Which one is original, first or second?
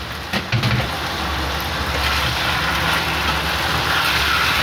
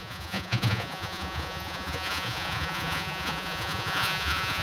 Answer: first